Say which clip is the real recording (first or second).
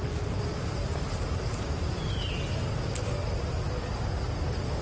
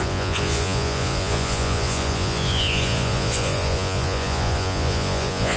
first